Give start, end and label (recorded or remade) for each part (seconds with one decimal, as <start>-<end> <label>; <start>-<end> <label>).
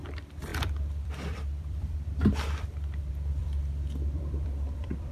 0.0-5.1 remade